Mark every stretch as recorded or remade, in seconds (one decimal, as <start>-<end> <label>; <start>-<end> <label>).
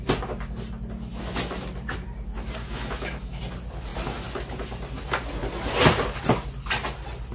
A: 0.0-1.1 recorded; 1.1-1.6 remade; 1.6-2.6 recorded; 2.6-3.4 remade; 3.4-7.3 recorded